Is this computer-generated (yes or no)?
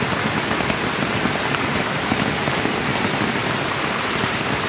no